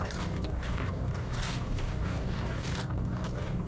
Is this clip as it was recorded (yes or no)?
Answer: no